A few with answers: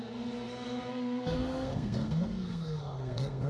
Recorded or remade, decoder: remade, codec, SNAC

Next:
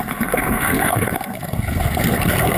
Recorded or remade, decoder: remade, codec, SNAC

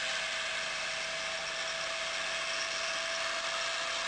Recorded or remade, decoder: recorded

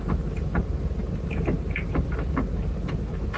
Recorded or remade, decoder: recorded